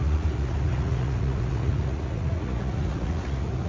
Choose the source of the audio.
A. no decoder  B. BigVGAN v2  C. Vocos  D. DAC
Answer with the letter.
C